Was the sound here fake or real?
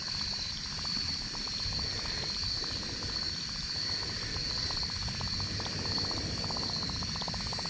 real